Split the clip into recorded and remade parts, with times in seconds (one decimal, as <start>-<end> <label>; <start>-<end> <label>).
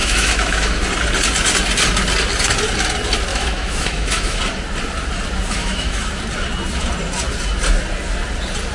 0.0-0.8 remade; 0.8-3.3 recorded; 3.3-4.4 remade; 4.4-5.6 recorded; 5.6-6.2 remade; 6.2-8.7 recorded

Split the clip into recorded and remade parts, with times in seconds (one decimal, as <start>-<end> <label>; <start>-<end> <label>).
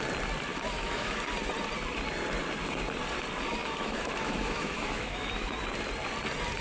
0.0-0.5 recorded; 0.5-1.2 remade; 1.2-3.6 recorded; 3.6-5.5 remade; 5.5-6.6 recorded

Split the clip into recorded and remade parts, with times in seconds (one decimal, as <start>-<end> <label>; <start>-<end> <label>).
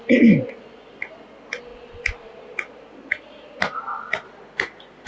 0.0-5.1 recorded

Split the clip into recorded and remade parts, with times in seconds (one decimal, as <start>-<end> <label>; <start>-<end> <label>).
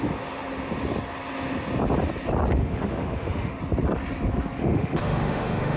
0.0-2.6 recorded; 2.6-3.6 remade; 3.6-4.6 recorded; 4.6-5.8 remade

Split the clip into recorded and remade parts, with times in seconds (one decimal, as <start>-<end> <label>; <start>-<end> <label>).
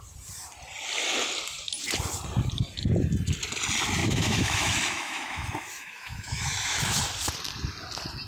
0.0-4.0 recorded; 4.0-7.0 remade; 7.0-8.3 recorded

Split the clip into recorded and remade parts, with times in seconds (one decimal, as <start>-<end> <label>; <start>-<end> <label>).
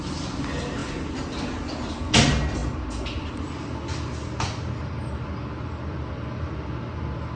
0.0-7.4 recorded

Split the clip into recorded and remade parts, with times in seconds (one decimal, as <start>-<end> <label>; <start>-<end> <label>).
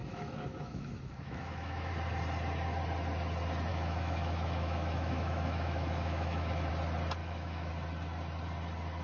0.0-1.9 remade; 1.9-3.7 recorded; 3.7-6.7 remade; 6.7-7.2 recorded; 7.2-7.7 remade; 7.7-9.0 recorded